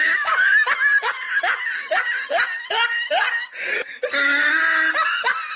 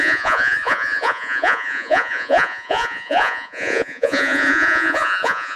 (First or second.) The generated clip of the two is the second